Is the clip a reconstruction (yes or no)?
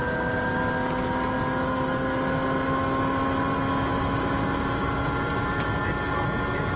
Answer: no